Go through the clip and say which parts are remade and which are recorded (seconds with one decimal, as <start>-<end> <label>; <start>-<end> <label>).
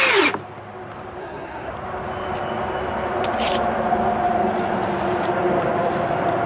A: 0.0-1.2 recorded; 1.2-1.7 remade; 1.7-6.5 recorded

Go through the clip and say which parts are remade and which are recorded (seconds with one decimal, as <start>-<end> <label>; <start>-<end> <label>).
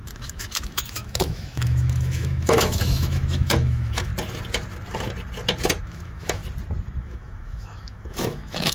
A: 0.0-4.1 remade; 4.1-5.8 recorded; 5.8-6.4 remade; 6.4-7.0 recorded; 7.0-8.7 remade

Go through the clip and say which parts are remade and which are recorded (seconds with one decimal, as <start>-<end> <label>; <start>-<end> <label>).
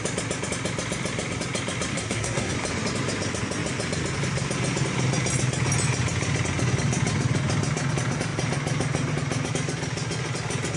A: 0.0-1.9 recorded; 1.9-2.5 remade; 2.5-10.8 recorded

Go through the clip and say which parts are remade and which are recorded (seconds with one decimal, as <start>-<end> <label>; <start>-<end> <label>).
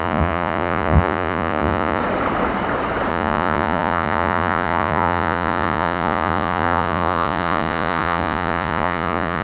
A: 0.0-2.0 remade; 2.0-3.1 recorded; 3.1-9.4 remade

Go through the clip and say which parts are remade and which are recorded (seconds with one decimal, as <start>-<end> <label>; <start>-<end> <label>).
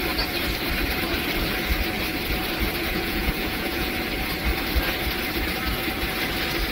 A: 0.0-2.9 recorded; 2.9-3.9 remade; 3.9-6.7 recorded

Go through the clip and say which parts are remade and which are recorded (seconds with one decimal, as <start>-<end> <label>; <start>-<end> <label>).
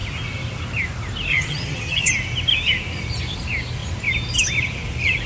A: 0.0-1.3 recorded; 1.3-2.1 remade; 2.1-5.3 recorded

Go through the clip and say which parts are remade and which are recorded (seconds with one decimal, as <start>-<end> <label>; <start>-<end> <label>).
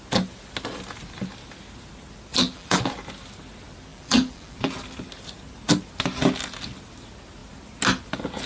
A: 0.0-2.3 recorded; 2.3-2.9 remade; 2.9-3.9 recorded; 3.9-4.7 remade; 4.7-8.5 recorded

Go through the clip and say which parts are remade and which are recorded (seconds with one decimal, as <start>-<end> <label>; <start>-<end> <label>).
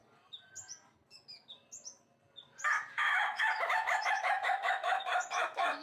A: 0.0-2.9 recorded; 2.9-5.8 remade